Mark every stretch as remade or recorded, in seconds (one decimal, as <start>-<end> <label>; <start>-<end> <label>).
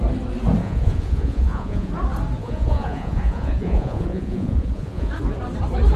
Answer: 0.0-0.6 recorded; 0.6-1.9 remade; 1.9-2.4 recorded; 2.4-5.1 remade; 5.1-6.0 recorded